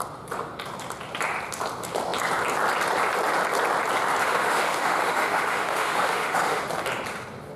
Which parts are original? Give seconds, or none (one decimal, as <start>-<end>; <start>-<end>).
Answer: 0.0-4.2; 6.6-7.6